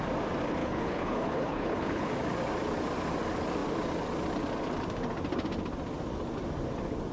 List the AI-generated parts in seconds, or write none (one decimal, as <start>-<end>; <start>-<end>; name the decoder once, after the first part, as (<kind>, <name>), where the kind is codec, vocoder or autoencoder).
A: 0.6-2.1 (codec, HILCodec)